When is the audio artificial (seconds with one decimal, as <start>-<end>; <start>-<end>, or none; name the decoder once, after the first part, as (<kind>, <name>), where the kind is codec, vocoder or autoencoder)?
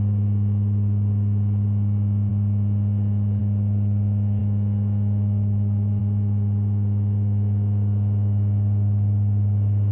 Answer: none